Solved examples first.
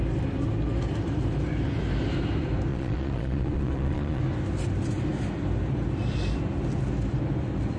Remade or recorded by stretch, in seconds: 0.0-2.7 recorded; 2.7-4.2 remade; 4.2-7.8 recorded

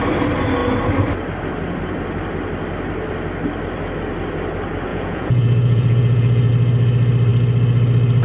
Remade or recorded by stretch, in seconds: 0.0-4.9 recorded; 4.9-6.5 remade; 6.5-8.2 recorded

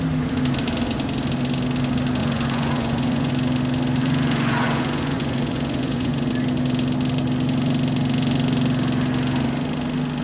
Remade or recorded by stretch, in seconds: 0.0-2.2 recorded; 2.2-3.3 remade; 3.3-4.0 recorded; 4.0-6.3 remade; 6.3-10.2 recorded

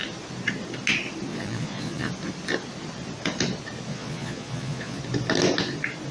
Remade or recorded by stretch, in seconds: 0.0-1.3 recorded; 1.3-2.1 remade; 2.1-3.9 recorded; 3.9-5.0 remade; 5.0-6.1 recorded

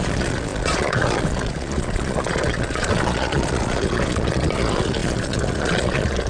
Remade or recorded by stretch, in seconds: 0.0-6.3 remade